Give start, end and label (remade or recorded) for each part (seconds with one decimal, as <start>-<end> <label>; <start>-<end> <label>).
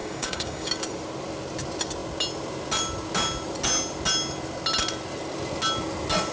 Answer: 0.0-0.7 remade; 0.7-6.3 recorded